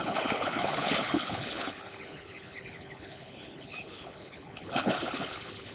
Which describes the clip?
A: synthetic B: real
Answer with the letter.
A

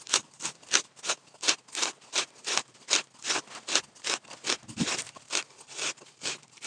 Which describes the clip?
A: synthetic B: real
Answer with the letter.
B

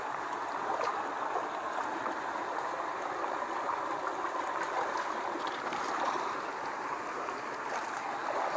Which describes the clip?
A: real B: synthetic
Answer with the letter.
A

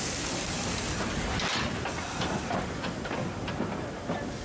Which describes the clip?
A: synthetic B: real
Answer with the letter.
B